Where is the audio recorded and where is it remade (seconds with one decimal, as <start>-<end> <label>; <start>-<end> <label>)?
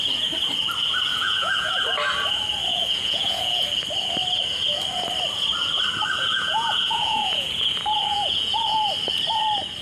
0.0-1.1 recorded; 1.1-1.8 remade; 1.8-2.7 recorded; 2.7-3.6 remade; 3.6-6.2 recorded; 6.2-8.9 remade; 8.9-9.8 recorded